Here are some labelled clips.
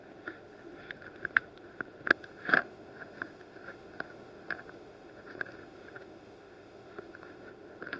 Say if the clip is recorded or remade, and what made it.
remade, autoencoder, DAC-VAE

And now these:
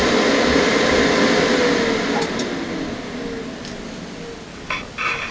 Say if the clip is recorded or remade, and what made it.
recorded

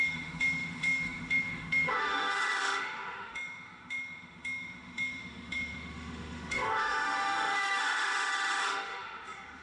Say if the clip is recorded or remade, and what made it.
remade, autoencoder, DAC-VAE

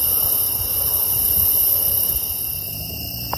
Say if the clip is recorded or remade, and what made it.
recorded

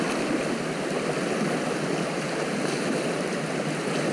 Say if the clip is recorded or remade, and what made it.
recorded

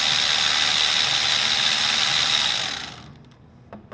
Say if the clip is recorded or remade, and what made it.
recorded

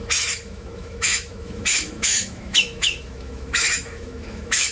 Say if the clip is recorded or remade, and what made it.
remade, autoencoder, DAC-VAE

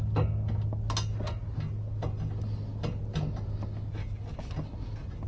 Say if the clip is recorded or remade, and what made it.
recorded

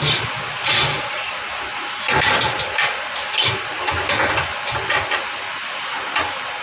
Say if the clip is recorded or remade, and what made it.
recorded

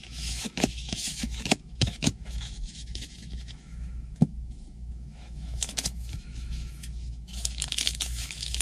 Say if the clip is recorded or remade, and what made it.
remade, autoencoder, DAC-VAE